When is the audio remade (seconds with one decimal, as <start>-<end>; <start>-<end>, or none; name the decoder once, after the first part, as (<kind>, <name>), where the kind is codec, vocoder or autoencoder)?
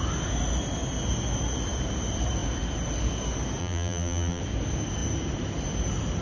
3.6-4.4 (vocoder, BigVGAN v2)